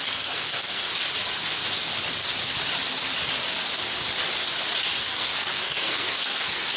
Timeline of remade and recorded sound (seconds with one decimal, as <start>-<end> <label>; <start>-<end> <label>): 0.0-0.9 remade; 0.9-5.0 recorded; 5.0-6.8 remade

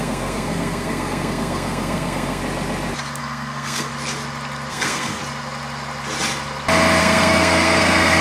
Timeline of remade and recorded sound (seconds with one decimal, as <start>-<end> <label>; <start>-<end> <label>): 0.0-2.4 remade; 2.4-3.2 recorded; 3.2-3.9 remade; 3.9-4.7 recorded; 4.7-5.2 remade; 5.2-7.0 recorded; 7.0-8.2 remade

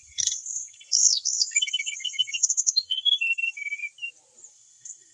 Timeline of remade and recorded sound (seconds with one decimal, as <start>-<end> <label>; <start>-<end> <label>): 0.0-3.9 remade; 3.9-4.5 recorded; 4.5-5.1 remade

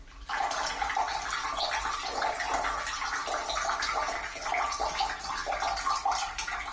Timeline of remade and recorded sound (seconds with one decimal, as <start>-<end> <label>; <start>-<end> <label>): 0.0-6.7 recorded

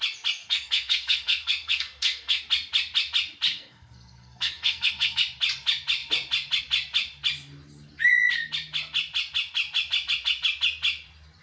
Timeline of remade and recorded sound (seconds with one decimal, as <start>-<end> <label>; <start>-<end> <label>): 0.0-0.4 recorded; 0.4-2.4 remade; 2.4-3.5 recorded; 3.5-5.2 remade; 5.2-11.4 recorded